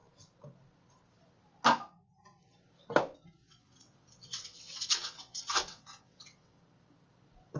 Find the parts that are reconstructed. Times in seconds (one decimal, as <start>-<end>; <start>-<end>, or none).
3.4-6.6